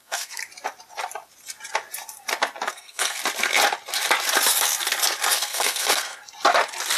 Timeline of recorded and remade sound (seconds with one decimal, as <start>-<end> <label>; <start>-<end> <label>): 0.0-0.4 remade; 0.4-2.7 recorded; 2.7-3.2 remade; 3.2-5.3 recorded; 5.3-6.2 remade; 6.2-7.0 recorded